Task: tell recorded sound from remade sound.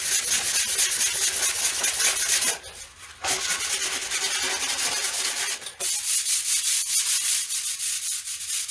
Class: recorded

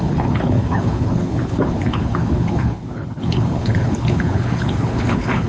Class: remade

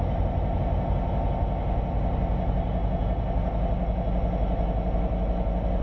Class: recorded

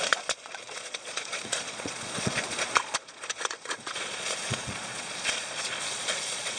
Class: remade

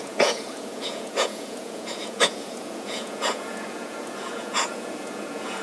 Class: remade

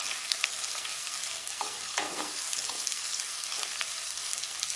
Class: remade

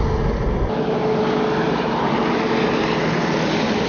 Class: recorded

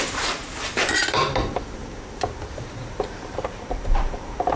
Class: remade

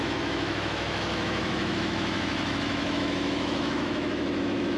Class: remade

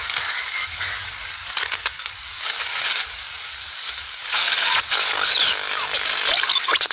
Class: remade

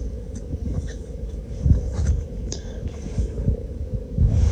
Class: remade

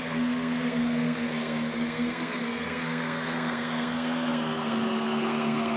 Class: remade